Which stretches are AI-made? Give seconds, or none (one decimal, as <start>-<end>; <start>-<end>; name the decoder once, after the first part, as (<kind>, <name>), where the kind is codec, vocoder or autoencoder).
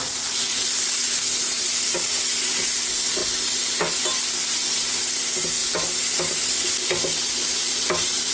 0.0-0.6 (vocoder, Vocos)